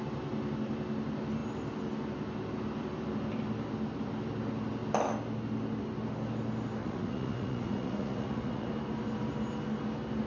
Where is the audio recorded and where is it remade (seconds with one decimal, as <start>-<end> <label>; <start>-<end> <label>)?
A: 0.0-6.8 recorded; 6.8-8.7 remade; 8.7-10.3 recorded